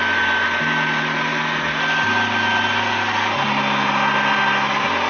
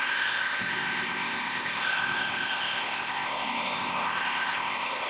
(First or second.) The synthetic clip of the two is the second